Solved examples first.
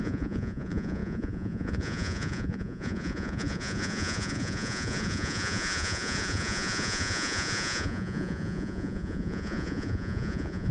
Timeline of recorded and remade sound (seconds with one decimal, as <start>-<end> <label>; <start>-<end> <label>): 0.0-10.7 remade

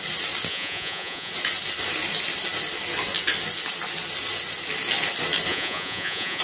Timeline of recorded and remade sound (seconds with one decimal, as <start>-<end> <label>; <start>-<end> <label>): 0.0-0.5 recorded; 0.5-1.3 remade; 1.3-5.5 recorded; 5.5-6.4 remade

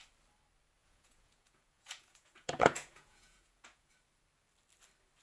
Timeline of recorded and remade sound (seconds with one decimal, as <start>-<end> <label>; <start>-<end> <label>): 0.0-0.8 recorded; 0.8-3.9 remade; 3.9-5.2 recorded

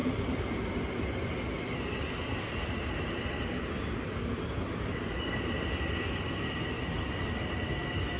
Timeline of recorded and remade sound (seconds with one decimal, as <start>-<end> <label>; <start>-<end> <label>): 0.0-8.2 recorded

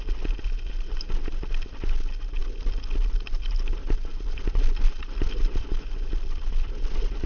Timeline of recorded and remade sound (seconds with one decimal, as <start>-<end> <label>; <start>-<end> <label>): 0.0-7.3 recorded

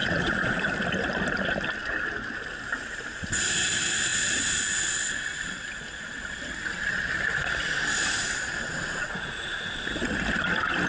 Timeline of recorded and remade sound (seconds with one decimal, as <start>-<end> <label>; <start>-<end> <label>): 0.0-0.7 remade; 0.7-8.7 recorded; 8.7-9.7 remade; 9.7-10.9 recorded

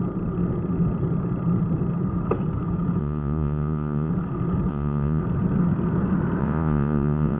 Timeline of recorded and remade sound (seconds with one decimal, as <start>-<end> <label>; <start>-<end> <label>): 0.0-3.0 recorded; 3.0-4.1 remade; 4.1-4.7 recorded; 4.7-5.2 remade; 5.2-6.4 recorded; 6.4-7.4 remade